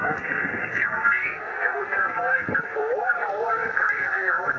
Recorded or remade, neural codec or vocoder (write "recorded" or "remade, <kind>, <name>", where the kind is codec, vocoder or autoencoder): remade, codec, SNAC